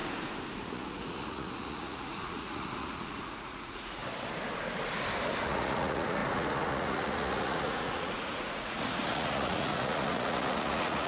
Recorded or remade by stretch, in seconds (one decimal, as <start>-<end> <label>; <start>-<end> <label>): 0.0-0.6 recorded; 0.6-4.0 remade; 4.0-5.4 recorded; 5.4-11.1 remade